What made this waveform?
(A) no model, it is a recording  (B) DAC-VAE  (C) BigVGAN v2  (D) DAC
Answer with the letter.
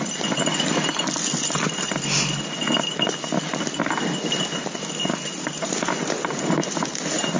A